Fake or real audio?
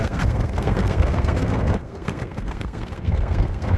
fake